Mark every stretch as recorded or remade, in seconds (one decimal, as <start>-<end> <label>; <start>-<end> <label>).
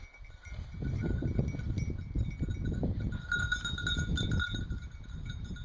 0.0-5.6 recorded